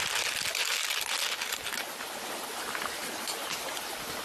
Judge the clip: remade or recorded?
recorded